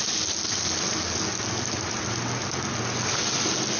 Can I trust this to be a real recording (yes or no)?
yes